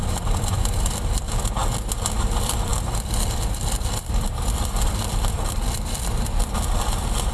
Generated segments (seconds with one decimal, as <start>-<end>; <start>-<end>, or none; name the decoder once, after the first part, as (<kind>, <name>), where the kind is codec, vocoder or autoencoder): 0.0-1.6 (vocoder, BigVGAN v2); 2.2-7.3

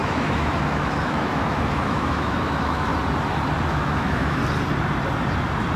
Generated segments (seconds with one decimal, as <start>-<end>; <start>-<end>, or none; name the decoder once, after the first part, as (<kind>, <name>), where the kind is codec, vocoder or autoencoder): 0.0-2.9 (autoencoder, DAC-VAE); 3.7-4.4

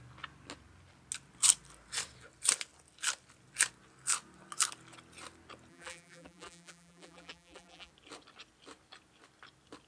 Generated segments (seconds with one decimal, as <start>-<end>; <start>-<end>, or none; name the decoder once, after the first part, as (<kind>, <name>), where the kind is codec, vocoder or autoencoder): 5.7-7.9 (vocoder, BigVGAN v2)